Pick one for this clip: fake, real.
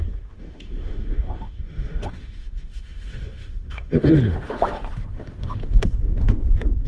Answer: fake